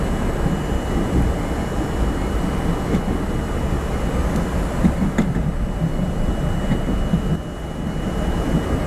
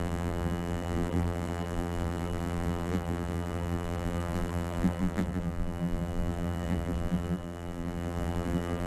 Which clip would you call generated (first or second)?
second